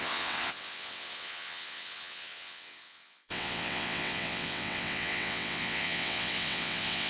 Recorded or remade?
remade